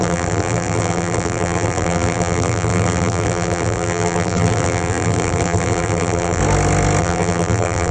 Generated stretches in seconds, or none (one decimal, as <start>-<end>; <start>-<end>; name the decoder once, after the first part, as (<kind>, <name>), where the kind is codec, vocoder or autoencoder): 0.0-6.4 (vocoder, BigVGAN v2); 7.0-7.9